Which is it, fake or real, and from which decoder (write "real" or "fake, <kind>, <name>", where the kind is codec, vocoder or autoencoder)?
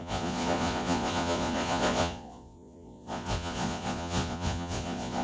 fake, vocoder, Vocos